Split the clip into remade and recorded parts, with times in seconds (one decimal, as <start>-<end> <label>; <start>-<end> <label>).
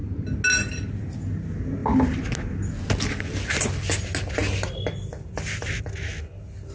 0.0-6.7 recorded